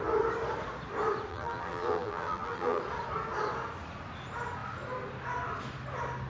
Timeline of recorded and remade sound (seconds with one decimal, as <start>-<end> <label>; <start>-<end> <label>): 0.0-1.3 recorded; 1.3-2.8 remade; 2.8-6.3 recorded